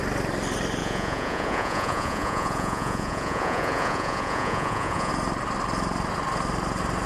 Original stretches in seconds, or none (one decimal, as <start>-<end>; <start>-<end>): 0.0-0.8; 5.1-7.1